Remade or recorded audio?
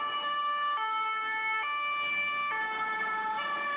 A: remade